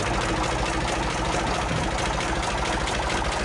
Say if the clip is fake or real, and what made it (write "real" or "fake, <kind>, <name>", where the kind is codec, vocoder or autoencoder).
real